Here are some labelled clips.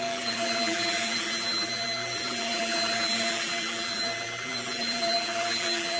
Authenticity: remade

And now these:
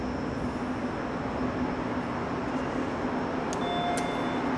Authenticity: recorded